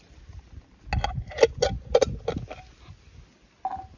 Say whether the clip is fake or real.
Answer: real